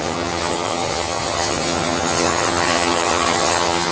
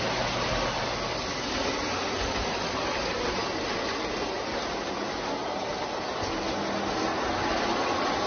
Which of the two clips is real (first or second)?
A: second